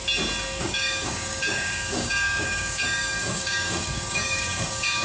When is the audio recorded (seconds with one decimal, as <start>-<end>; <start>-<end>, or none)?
0.0-0.6